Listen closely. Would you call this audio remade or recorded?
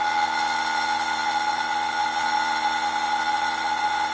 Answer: recorded